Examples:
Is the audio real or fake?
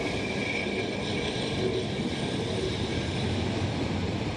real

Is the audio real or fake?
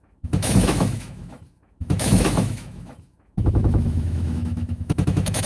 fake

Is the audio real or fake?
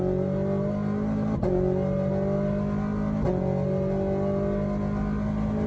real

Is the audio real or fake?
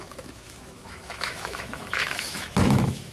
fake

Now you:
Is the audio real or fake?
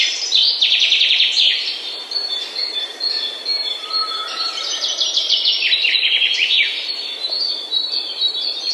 fake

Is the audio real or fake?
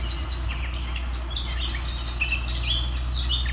real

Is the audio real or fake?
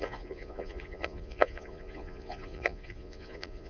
fake